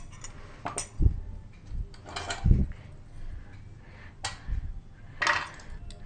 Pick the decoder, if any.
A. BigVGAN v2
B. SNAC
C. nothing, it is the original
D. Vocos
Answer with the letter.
C